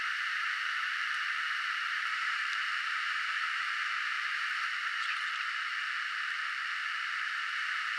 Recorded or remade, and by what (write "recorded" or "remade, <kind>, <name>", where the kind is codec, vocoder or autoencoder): remade, vocoder, BigVGAN v2